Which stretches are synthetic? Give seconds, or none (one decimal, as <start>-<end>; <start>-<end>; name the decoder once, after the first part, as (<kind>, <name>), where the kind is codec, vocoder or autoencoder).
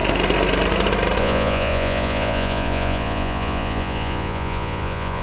1.2-5.2 (vocoder, Vocos)